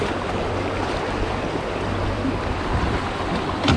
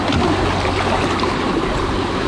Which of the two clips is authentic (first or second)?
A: second